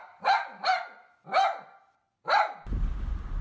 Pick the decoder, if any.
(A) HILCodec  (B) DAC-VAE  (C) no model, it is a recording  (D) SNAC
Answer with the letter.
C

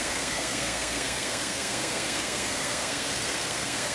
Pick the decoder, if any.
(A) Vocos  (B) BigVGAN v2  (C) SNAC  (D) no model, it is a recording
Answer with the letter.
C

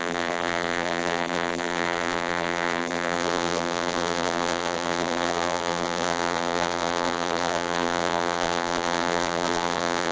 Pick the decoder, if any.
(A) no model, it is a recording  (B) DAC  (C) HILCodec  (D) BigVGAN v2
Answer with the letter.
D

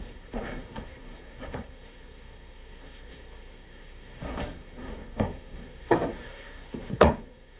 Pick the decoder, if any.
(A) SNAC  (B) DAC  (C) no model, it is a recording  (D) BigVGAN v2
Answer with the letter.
A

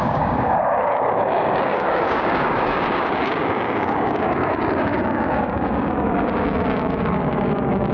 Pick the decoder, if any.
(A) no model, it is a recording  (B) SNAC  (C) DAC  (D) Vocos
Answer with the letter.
C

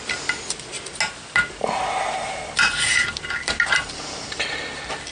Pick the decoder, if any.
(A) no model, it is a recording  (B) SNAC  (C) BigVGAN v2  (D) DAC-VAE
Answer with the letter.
A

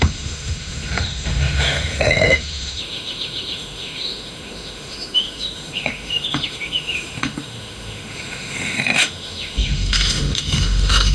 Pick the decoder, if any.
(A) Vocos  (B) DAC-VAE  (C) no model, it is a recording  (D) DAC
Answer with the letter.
B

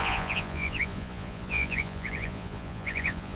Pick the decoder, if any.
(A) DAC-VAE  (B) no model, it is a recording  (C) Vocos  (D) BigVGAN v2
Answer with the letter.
C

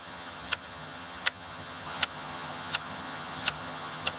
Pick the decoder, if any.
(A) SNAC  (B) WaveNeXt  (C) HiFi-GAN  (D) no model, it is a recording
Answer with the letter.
C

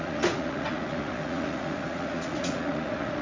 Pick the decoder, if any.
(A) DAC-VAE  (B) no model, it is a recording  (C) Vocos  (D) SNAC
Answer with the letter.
C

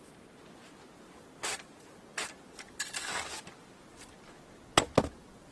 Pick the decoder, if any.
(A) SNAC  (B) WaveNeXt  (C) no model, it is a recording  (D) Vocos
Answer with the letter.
C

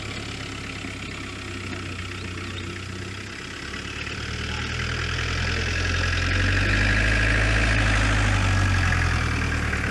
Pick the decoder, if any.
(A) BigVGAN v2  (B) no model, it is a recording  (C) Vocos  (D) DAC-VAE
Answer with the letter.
B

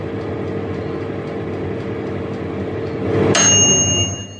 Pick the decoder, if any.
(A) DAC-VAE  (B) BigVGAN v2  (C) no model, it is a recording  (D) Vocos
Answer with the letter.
C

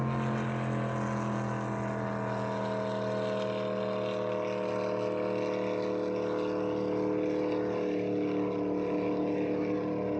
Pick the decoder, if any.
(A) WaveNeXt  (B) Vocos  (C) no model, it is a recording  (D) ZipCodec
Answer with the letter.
C